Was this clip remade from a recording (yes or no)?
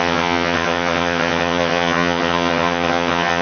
yes